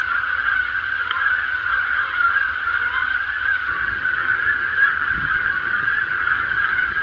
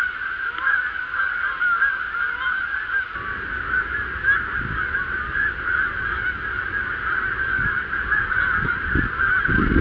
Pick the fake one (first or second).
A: first